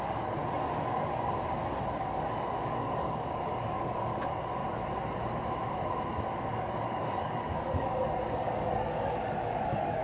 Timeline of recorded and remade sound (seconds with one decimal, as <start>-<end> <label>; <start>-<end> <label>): 0.0-0.4 remade; 0.4-2.0 recorded; 2.0-4.6 remade; 4.6-6.3 recorded; 6.3-10.0 remade